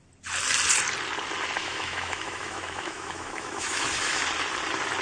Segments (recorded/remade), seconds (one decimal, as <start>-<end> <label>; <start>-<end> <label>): 0.0-1.6 recorded; 1.6-4.2 remade; 4.2-5.0 recorded